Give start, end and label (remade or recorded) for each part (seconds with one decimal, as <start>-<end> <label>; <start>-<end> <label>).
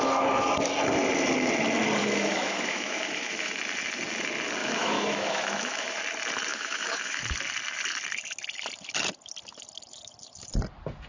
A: 0.0-2.0 recorded; 2.0-3.5 remade; 3.5-4.6 recorded; 4.6-6.0 remade; 6.0-6.5 recorded; 6.5-7.2 remade; 7.2-11.1 recorded